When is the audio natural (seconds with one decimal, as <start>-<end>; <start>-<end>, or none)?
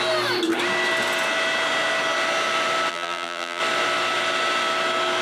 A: 0.0-2.9; 3.6-5.2